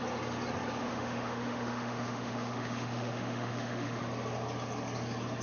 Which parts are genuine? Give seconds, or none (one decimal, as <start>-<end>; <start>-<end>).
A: 0.0-0.8; 4.0-5.4